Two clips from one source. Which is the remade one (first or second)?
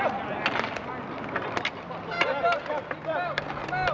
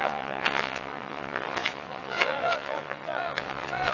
second